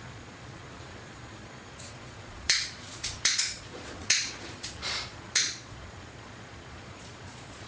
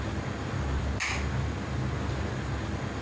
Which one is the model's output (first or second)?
first